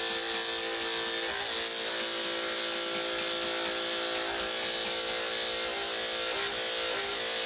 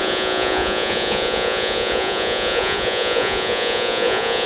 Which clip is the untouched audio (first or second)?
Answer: first